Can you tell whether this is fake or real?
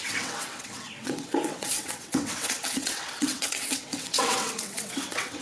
fake